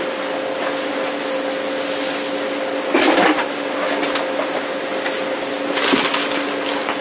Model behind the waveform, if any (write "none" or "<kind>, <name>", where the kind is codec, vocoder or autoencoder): none